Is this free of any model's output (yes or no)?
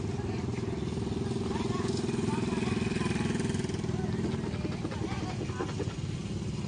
yes